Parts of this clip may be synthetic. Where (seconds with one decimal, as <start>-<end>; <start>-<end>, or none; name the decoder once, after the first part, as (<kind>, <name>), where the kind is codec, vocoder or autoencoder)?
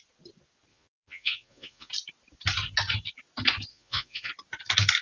0.7-1.9 (vocoder, Vocos); 3.7-4.3